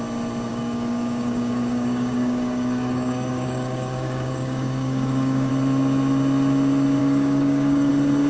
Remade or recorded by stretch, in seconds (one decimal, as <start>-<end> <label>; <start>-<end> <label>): 0.0-0.5 recorded; 0.5-5.5 remade; 5.5-7.0 recorded; 7.0-7.9 remade; 7.9-8.3 recorded